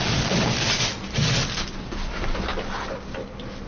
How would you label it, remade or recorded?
remade